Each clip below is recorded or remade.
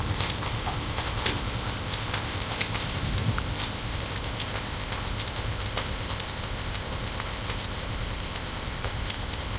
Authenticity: remade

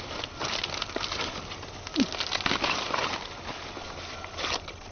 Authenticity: recorded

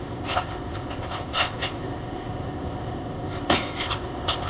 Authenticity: remade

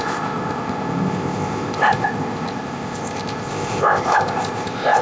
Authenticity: remade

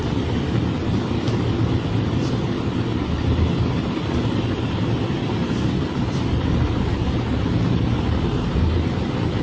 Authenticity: recorded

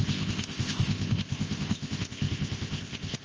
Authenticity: remade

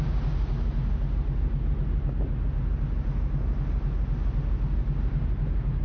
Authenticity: recorded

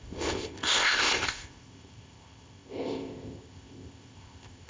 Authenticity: remade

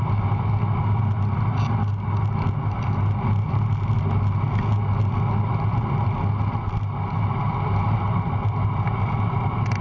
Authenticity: recorded